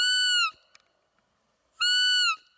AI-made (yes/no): no